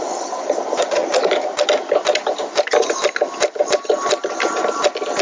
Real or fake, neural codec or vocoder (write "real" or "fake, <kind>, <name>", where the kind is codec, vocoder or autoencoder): real